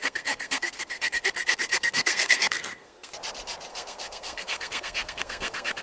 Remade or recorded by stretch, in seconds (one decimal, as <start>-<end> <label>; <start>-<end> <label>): 0.0-1.2 remade; 1.2-1.6 recorded; 1.6-3.1 remade; 3.1-3.7 recorded; 3.7-5.8 remade